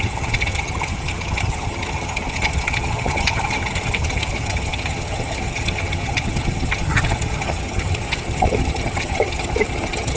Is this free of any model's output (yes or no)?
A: no